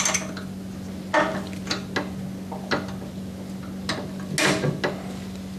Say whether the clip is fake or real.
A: real